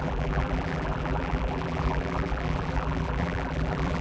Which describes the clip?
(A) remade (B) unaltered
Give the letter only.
A